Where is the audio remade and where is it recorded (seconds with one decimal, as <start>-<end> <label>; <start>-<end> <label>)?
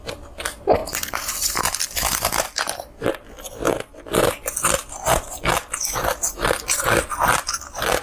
0.0-8.0 recorded